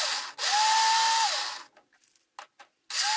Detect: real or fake real